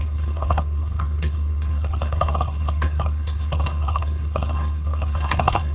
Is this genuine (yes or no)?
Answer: no